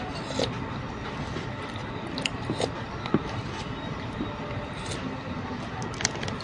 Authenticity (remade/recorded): recorded